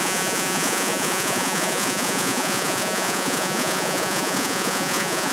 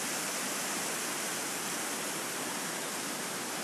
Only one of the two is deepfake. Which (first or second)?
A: first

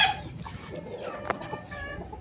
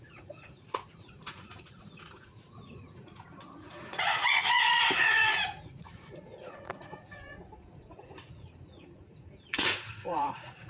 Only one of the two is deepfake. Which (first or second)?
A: second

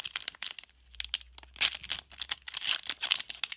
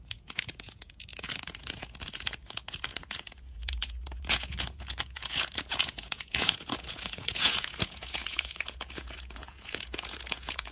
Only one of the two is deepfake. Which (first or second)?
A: second